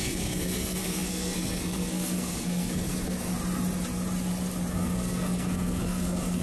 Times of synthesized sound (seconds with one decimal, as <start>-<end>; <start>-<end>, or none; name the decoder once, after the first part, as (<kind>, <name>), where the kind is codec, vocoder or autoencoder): 0.0-3.3 (codec, SNAC); 4.7-6.4